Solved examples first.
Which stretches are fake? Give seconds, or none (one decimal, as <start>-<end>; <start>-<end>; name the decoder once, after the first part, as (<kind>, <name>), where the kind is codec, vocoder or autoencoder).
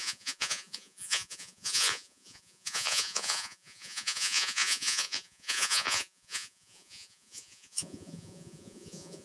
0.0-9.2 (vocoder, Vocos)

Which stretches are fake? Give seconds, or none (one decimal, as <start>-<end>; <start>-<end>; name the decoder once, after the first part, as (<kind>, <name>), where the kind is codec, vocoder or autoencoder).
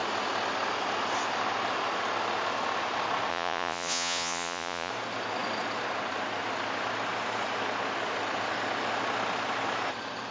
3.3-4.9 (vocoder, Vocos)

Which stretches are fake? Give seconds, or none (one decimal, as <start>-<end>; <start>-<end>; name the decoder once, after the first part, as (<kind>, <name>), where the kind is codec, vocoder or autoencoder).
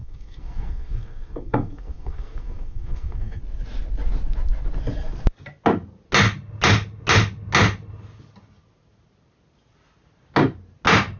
0.0-3.4 (codec, SNAC)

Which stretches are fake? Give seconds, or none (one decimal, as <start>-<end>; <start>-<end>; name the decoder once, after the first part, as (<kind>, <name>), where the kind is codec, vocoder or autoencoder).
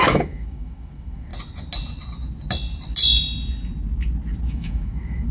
0.0-1.3 (autoencoder, DAC-VAE); 4.5-5.3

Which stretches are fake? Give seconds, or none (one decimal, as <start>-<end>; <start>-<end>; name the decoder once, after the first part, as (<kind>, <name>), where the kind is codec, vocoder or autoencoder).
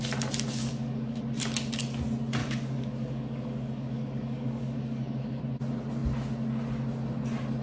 0.6-1.2 (codec, DAC); 2.4-5.4